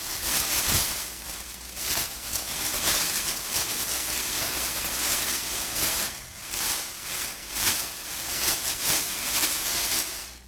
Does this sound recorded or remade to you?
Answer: remade